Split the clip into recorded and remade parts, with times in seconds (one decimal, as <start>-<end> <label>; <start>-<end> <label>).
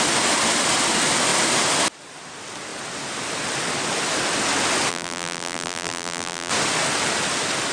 0.0-4.9 recorded; 4.9-6.5 remade; 6.5-7.7 recorded